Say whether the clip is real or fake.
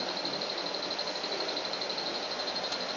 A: real